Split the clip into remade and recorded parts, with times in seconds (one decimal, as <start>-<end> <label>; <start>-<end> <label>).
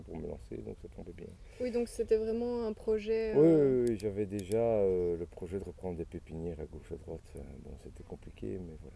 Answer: 0.0-6.8 recorded; 6.8-8.4 remade; 8.4-9.0 recorded